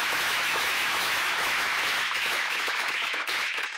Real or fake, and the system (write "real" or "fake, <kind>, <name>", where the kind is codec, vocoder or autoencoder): fake, autoencoder, DAC-VAE